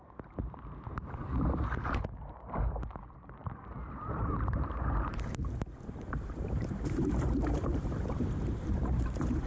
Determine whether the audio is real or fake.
fake